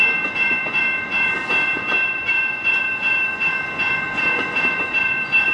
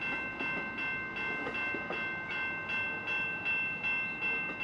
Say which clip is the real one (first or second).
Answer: second